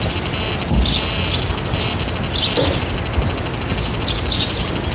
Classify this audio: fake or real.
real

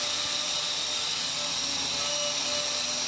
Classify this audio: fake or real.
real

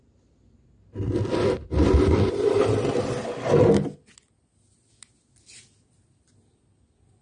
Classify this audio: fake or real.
real